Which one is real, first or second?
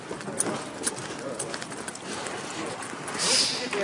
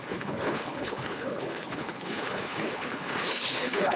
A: first